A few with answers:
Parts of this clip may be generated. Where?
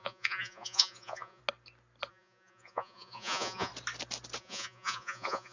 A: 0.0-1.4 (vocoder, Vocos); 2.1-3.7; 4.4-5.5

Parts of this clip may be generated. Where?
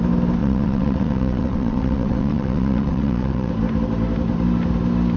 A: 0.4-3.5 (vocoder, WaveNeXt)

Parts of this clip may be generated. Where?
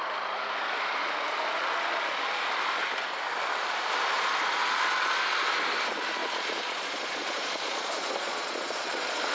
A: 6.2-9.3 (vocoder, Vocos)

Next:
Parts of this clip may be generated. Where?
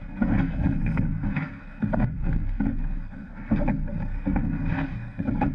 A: 0.0-5.5 (codec, SNAC)